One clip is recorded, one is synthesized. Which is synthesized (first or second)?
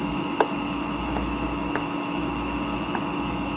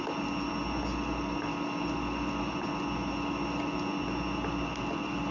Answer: first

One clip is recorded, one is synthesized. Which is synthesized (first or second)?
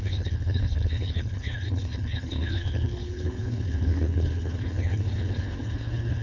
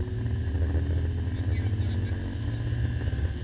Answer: first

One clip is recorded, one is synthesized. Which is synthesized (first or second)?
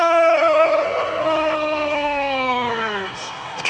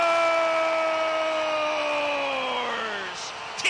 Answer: first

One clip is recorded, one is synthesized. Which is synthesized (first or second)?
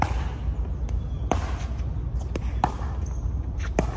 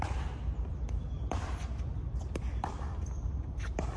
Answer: second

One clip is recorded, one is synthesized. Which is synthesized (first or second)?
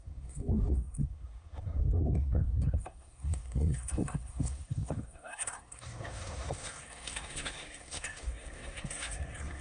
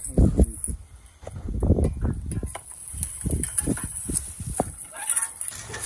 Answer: first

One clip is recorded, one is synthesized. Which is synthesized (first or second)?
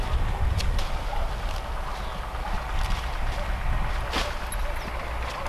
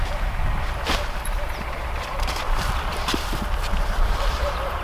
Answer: second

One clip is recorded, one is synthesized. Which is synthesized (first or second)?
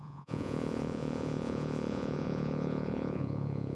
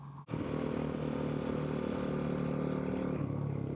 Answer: first